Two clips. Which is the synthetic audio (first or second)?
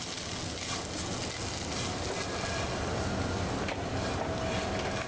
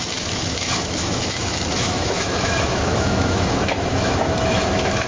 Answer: second